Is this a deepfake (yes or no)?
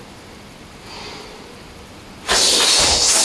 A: no